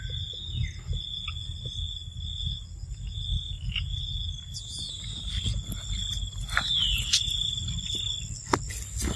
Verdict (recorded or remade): recorded